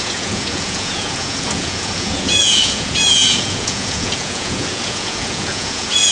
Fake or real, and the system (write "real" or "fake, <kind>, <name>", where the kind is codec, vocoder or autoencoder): fake, vocoder, Vocos